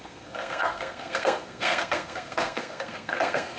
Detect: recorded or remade remade